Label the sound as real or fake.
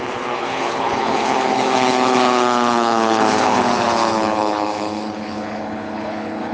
fake